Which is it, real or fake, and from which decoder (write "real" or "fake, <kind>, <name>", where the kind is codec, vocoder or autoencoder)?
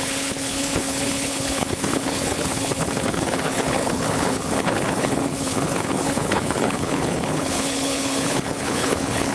fake, codec, HILCodec